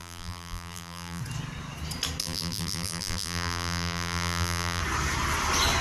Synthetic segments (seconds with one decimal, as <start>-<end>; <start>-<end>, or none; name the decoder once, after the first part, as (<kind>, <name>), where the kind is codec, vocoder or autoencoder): 0.0-1.2 (vocoder, BigVGAN v2); 2.2-4.8